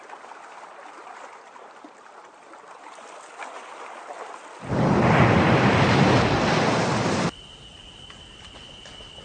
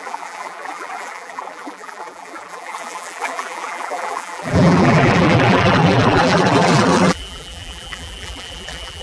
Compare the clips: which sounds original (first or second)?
first